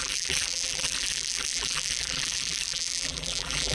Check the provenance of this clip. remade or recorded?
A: remade